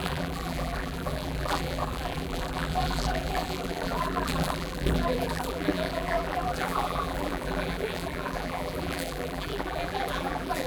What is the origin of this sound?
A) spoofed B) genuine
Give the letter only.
A